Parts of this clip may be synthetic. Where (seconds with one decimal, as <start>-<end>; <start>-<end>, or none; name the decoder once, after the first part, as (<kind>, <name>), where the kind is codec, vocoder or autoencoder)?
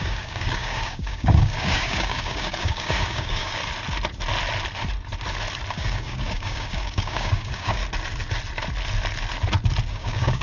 0.0-3.6 (codec, DAC); 5.7-7.8; 9.9-10.4